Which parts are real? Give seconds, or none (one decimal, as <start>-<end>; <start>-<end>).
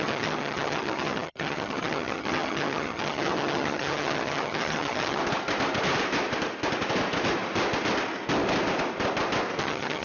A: 5.2-9.6